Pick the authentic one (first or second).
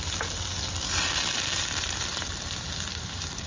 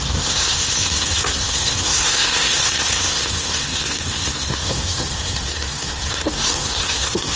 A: first